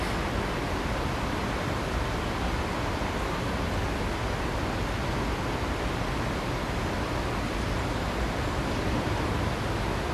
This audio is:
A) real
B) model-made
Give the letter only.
A